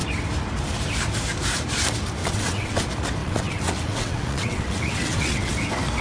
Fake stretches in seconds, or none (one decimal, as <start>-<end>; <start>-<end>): 2.2-2.8; 3.2-5.5